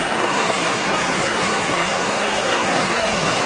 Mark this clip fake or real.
fake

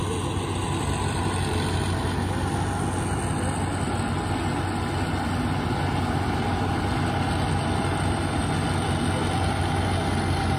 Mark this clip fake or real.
real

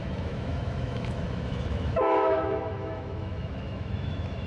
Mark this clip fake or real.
fake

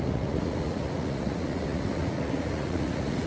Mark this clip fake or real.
fake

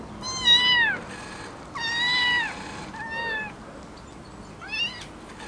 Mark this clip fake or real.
real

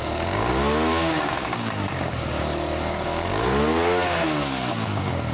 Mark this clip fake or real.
fake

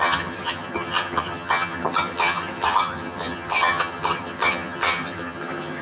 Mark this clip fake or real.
fake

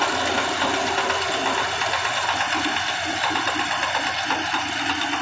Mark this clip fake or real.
real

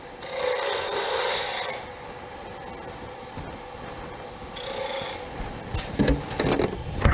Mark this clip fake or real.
real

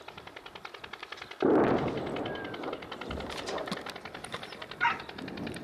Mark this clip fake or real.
real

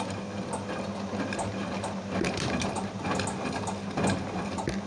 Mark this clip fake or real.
real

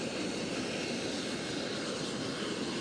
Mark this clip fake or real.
real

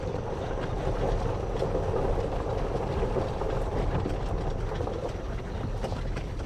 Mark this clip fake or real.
real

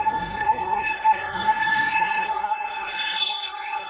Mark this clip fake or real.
fake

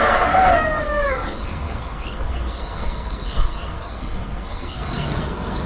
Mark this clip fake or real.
fake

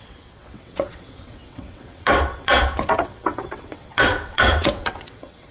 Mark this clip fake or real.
fake